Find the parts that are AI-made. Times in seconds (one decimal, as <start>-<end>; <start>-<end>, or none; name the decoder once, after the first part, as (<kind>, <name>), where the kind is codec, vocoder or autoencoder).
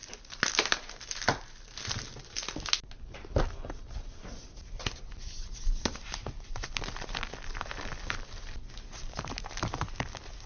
0.9-10.5 (vocoder, BigVGAN v2)